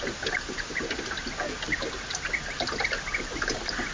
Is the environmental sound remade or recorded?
recorded